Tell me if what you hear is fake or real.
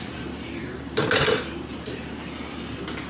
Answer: real